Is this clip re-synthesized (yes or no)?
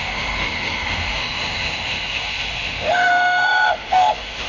yes